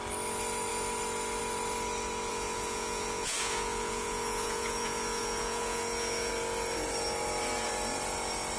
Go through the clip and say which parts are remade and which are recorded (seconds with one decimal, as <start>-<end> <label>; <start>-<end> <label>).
0.0-2.3 recorded; 2.3-6.3 remade; 6.3-8.6 recorded